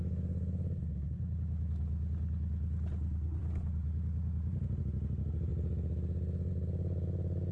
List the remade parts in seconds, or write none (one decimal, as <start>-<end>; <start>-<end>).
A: none